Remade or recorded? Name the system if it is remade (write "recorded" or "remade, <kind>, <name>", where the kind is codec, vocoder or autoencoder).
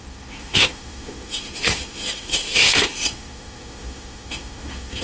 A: remade, autoencoder, DAC-VAE